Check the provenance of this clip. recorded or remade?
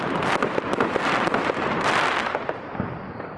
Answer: recorded